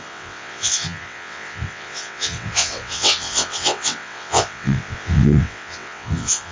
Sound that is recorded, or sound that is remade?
remade